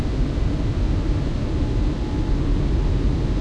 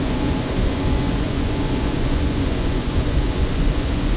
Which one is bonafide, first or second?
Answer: first